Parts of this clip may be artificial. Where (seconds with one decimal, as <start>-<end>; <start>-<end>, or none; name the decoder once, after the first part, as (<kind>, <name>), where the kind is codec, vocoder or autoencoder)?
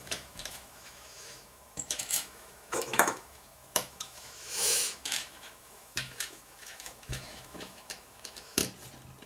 0.0-8.6 (autoencoder, DAC-VAE)